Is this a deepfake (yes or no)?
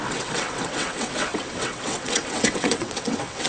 yes